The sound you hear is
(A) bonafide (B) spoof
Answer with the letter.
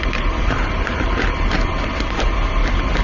A